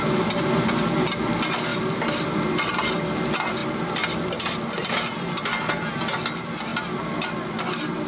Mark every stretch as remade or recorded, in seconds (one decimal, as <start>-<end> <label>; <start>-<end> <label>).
0.0-8.1 recorded